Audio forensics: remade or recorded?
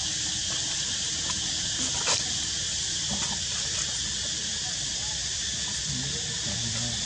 recorded